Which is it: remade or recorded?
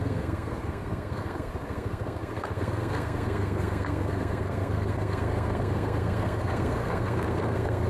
remade